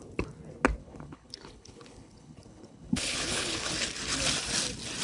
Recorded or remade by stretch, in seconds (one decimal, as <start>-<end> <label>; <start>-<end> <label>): 0.0-0.8 recorded; 0.8-3.7 remade; 3.7-5.0 recorded